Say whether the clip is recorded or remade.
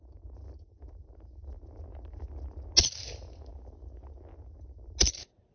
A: recorded